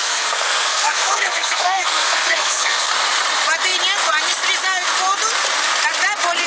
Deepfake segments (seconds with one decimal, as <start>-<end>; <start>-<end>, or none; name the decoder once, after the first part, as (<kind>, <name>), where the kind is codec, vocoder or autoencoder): 0.0-2.9 (codec, SNAC)